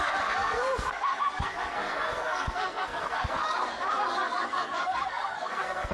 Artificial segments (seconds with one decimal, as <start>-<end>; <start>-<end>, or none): 0.0-5.9